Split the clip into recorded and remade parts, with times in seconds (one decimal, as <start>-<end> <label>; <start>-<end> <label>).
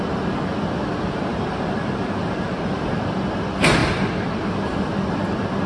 0.0-1.3 recorded; 1.3-2.9 remade; 2.9-3.8 recorded; 3.8-4.5 remade; 4.5-5.7 recorded